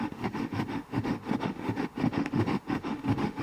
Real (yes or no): no